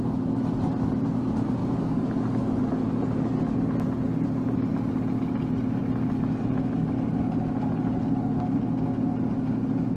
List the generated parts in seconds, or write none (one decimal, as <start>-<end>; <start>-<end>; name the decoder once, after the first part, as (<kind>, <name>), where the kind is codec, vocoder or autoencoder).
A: 1.6-2.6 (codec, DAC)